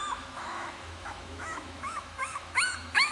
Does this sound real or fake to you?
fake